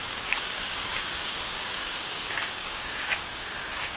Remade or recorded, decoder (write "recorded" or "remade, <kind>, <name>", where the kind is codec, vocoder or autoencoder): remade, codec, DAC